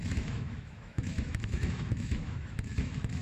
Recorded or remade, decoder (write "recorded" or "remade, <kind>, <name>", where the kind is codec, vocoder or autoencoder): remade, autoencoder, DAC-VAE